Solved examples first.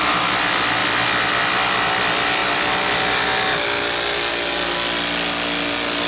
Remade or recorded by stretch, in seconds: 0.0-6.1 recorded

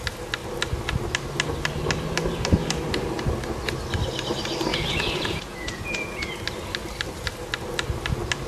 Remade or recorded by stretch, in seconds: 0.0-4.7 recorded; 4.7-6.3 remade; 6.3-8.5 recorded